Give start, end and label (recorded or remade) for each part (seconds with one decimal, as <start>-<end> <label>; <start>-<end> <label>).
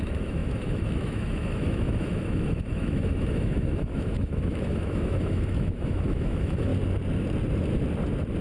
0.0-6.7 remade; 6.7-8.4 recorded